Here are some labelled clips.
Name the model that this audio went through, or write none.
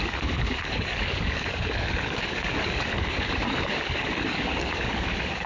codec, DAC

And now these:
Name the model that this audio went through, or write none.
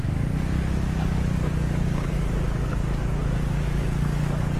codec, DAC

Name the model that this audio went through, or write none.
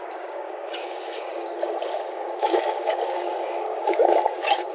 codec, DAC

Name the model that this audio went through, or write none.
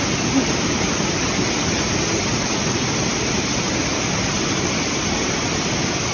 none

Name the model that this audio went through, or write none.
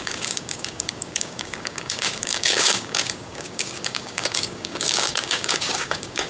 codec, DAC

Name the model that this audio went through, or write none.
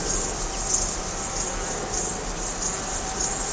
none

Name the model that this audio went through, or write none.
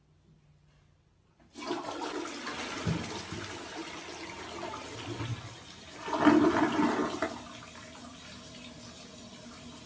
none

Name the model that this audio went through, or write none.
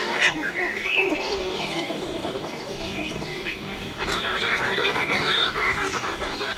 codec, DAC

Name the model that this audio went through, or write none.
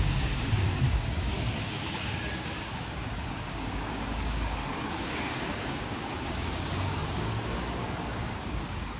codec, DAC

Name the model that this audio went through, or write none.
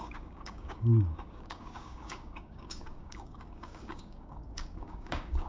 codec, DAC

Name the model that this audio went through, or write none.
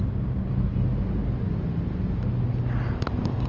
none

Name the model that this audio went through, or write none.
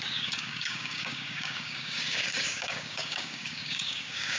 codec, DAC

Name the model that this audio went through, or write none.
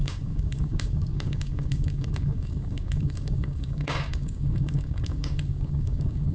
codec, DAC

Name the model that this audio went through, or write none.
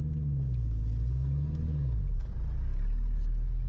none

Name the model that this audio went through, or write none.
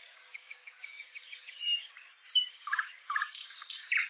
codec, DAC